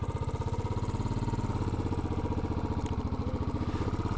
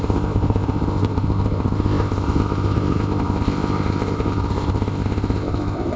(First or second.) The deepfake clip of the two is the second